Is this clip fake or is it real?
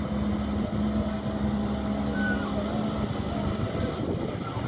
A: real